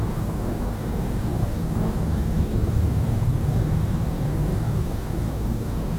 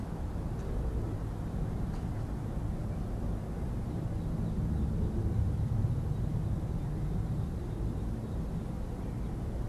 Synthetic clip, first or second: first